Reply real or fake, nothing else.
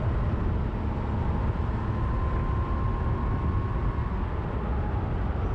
real